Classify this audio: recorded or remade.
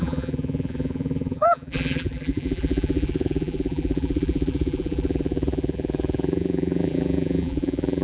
remade